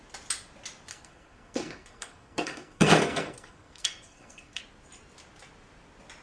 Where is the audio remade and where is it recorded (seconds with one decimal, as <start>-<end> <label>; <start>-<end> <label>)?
0.0-0.9 recorded; 0.9-4.6 remade; 4.6-6.2 recorded